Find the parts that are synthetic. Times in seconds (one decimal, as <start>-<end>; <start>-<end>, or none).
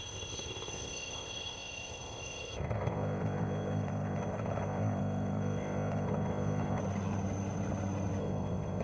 0.0-6.8; 8.2-8.8